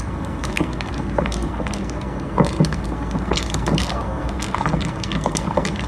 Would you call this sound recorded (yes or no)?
no